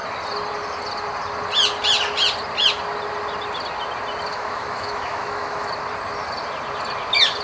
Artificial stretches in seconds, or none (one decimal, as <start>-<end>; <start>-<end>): 4.3-5.7